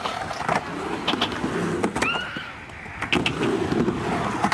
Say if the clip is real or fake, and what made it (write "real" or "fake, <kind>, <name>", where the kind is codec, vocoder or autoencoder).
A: real